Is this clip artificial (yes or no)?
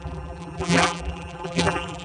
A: yes